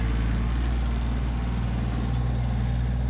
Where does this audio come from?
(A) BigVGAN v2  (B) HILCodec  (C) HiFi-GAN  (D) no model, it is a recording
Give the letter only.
D